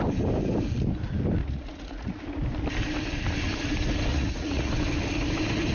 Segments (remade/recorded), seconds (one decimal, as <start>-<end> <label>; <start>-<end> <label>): 0.0-1.4 recorded; 1.4-2.2 remade; 2.2-4.1 recorded; 4.1-4.7 remade; 4.7-5.7 recorded